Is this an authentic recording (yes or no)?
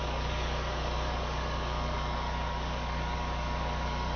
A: no